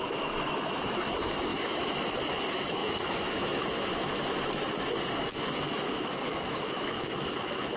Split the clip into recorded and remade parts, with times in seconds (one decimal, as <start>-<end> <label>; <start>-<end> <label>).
0.0-7.8 remade